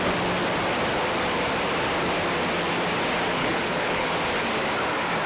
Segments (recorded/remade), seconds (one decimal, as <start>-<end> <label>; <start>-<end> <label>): 0.0-3.4 recorded; 3.4-4.1 remade; 4.1-5.3 recorded